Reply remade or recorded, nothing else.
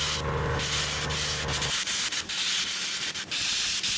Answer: recorded